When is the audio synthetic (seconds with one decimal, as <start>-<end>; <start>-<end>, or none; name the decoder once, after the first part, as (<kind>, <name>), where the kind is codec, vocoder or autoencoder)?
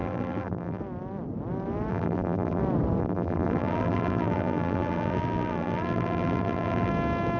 0.0-0.8 (vocoder, BigVGAN v2); 1.9-2.6; 3.0-6.9